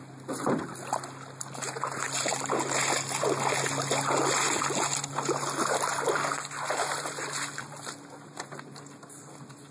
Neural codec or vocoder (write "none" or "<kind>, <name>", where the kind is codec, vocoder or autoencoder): none